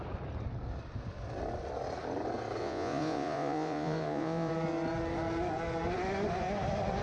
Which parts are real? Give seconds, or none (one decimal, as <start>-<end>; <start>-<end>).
0.0-2.6; 4.5-7.0